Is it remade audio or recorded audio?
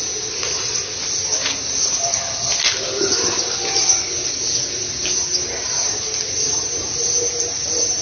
recorded